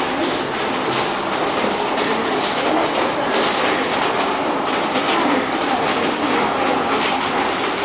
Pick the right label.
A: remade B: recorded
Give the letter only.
B